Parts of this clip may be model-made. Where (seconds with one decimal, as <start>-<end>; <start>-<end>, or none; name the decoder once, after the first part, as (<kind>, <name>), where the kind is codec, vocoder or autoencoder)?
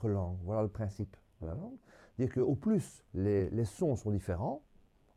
0.9-2.0 (codec, SNAC)